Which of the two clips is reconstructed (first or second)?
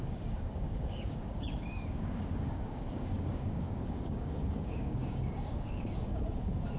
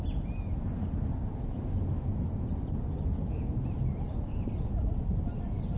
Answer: first